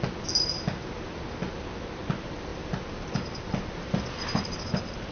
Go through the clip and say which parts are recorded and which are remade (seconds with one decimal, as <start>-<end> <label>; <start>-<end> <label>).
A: 0.0-5.1 recorded